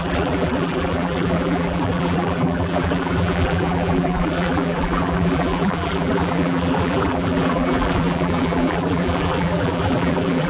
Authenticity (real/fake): fake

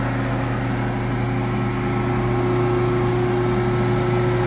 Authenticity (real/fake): real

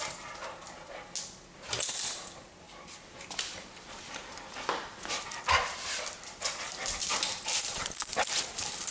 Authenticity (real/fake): real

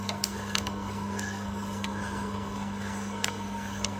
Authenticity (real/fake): fake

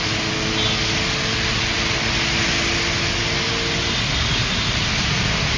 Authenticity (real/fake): real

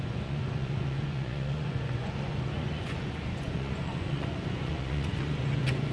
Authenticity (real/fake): fake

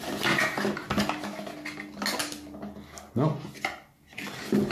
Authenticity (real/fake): real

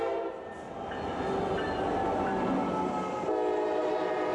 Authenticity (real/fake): real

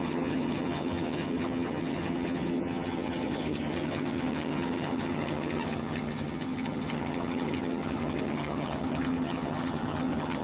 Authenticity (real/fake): fake